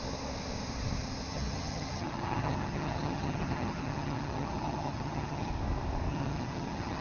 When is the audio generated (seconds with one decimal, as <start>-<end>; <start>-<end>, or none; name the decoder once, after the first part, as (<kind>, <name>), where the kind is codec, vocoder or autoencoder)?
1.3-5.5 (vocoder, HiFi-GAN); 6.1-7.0